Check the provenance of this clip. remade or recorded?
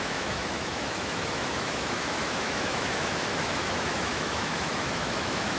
remade